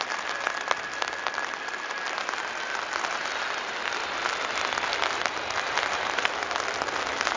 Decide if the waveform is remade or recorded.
recorded